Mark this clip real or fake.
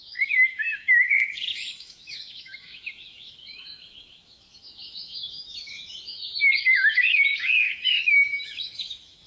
fake